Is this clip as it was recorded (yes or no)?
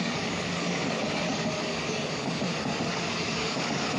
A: no